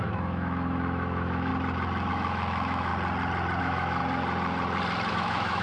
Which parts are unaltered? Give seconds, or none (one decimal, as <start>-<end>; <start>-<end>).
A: 1.5-2.1; 2.9-3.6; 4.0-5.1